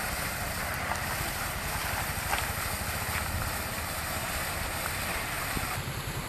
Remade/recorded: recorded